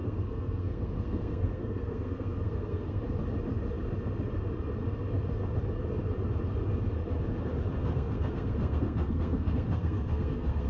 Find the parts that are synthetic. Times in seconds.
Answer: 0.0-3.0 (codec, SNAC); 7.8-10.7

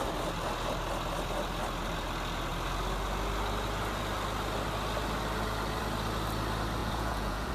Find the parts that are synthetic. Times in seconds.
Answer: 6.8-7.5 (vocoder, Vocos)

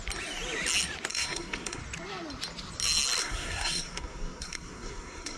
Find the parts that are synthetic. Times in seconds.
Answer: 1.1-1.8 (codec, SNAC); 3.2-5.4

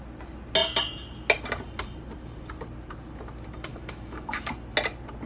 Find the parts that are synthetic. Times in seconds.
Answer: 3.7-4.5 (autoencoder, DAC-VAE)

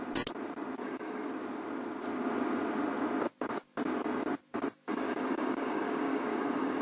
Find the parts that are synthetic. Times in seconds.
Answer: 0.8-1.3 (codec, DAC); 4.9-6.8

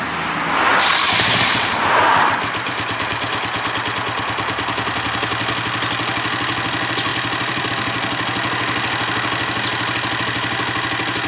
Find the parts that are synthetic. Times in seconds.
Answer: 0.7-3.4 (vocoder, BigVGAN v2); 7.1-7.7